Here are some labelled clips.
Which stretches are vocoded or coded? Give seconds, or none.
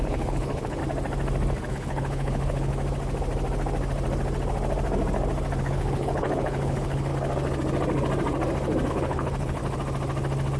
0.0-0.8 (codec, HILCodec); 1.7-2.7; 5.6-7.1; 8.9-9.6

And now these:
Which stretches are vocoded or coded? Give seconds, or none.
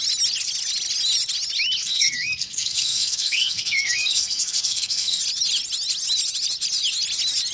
1.8-5.2 (codec, SNAC)